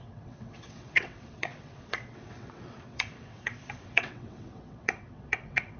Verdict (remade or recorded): remade